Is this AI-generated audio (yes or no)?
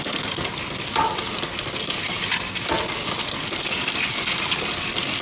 no